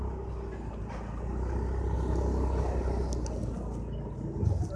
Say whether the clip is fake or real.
real